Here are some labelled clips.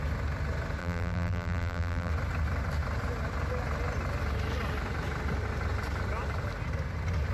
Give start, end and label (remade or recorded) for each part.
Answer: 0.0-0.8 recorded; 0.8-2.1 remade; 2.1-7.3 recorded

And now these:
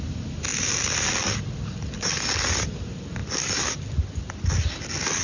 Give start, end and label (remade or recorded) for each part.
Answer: 0.0-0.5 recorded; 0.5-1.2 remade; 1.2-3.2 recorded; 3.2-3.7 remade; 3.7-5.2 recorded

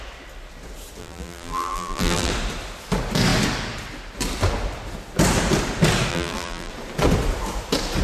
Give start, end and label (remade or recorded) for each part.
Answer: 0.0-1.0 recorded; 1.0-2.3 remade; 2.3-6.1 recorded; 6.1-6.7 remade; 6.7-8.0 recorded